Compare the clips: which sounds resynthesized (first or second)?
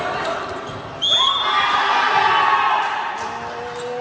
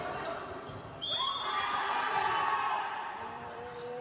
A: second